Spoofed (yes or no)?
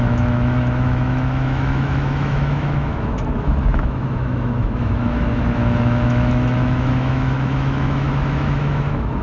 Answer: yes